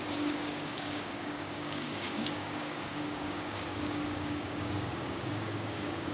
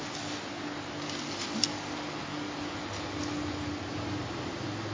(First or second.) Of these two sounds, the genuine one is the second